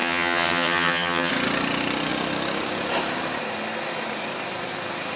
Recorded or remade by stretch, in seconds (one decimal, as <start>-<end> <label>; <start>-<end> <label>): 0.0-1.3 remade; 1.3-5.2 recorded

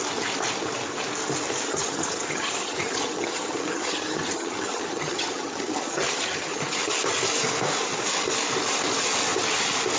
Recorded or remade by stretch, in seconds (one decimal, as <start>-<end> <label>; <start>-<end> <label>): 0.0-1.7 recorded; 1.7-6.9 remade; 6.9-10.0 recorded

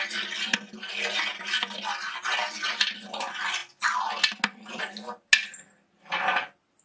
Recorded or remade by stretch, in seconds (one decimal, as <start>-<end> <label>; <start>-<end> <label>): 0.0-6.8 recorded